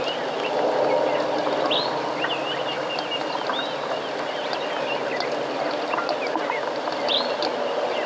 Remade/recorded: recorded